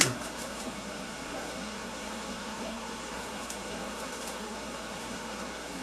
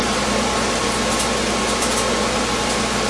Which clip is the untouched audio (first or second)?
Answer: second